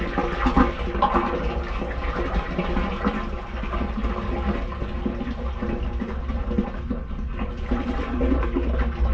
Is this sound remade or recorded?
recorded